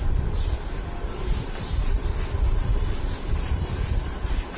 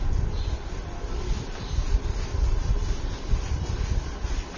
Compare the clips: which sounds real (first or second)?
second